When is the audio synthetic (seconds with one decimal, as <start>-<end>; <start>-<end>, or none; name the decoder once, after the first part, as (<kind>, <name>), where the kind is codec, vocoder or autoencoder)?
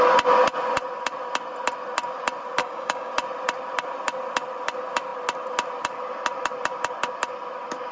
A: 2.6-3.1 (codec, DAC)